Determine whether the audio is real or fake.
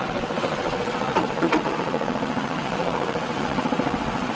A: fake